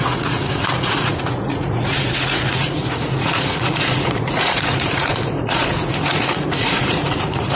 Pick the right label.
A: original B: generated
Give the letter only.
B